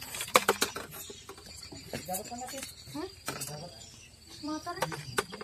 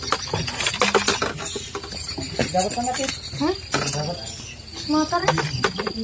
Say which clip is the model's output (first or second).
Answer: first